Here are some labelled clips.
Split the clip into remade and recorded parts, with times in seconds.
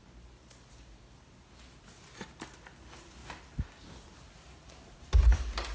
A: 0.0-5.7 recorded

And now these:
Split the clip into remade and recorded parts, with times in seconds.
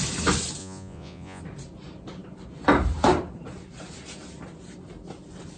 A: 0.0-0.6 recorded; 0.6-1.4 remade; 1.4-5.6 recorded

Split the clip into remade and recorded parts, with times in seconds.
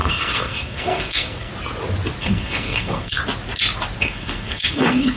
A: 0.0-1.5 remade; 1.5-2.2 recorded; 2.2-3.2 remade; 3.2-4.0 recorded; 4.0-5.2 remade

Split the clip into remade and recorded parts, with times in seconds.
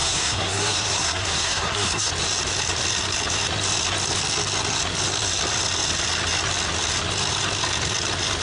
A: 0.0-2.1 remade; 2.1-8.4 recorded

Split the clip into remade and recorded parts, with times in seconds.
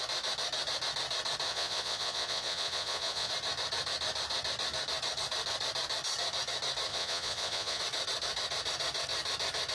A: 0.0-1.5 recorded; 1.5-3.3 remade; 3.3-6.9 recorded; 6.9-7.8 remade; 7.8-9.7 recorded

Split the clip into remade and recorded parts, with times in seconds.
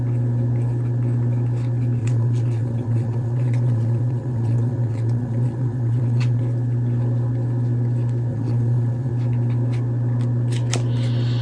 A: 0.0-2.0 recorded; 2.0-6.4 remade; 6.4-8.3 recorded; 8.3-9.1 remade; 9.1-11.4 recorded